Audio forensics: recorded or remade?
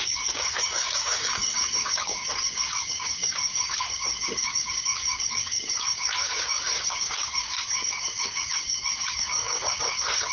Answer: remade